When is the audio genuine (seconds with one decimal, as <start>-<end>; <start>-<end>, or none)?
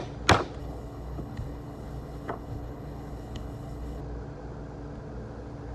0.0-0.6; 4.0-5.7